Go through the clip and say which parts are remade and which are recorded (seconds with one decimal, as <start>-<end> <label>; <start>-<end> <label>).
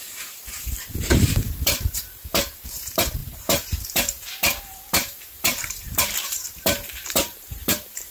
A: 0.0-8.1 remade